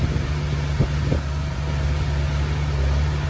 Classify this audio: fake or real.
real